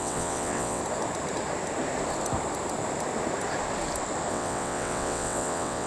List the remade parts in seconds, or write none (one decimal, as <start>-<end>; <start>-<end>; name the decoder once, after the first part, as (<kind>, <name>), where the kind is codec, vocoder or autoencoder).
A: 0.0-0.8 (vocoder, WaveNeXt); 4.3-5.9